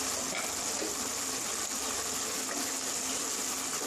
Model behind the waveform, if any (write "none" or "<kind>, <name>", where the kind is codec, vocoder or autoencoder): none